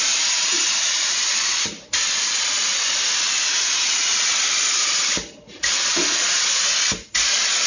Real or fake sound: real